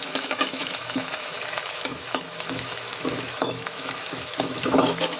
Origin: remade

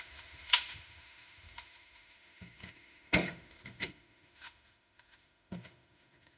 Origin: remade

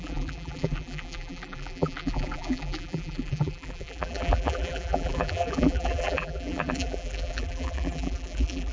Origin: remade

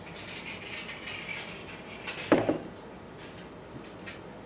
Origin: recorded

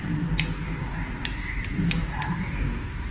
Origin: recorded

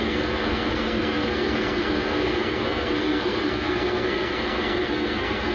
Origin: remade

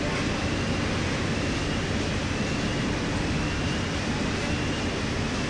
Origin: recorded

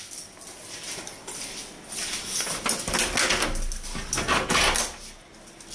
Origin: recorded